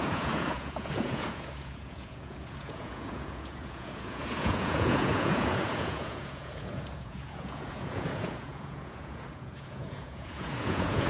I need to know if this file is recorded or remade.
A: remade